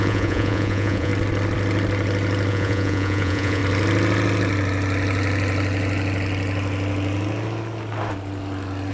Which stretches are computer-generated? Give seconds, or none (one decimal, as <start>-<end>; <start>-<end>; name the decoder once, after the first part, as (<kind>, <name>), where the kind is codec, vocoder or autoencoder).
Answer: 0.0-1.1 (vocoder, Vocos); 2.5-3.6